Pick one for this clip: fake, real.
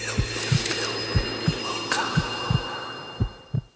real